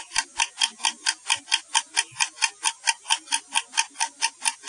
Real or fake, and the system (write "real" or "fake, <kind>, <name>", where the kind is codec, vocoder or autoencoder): real